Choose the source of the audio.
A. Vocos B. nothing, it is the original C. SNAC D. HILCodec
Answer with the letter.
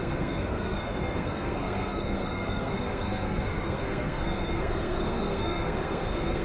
C